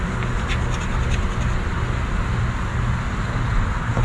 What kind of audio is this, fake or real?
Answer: real